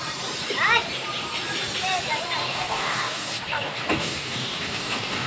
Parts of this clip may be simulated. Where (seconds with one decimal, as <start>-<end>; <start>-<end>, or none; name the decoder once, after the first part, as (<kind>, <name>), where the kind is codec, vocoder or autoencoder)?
2.4-5.3 (codec, DAC)